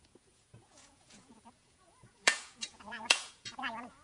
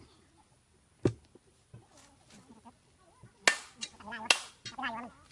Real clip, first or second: second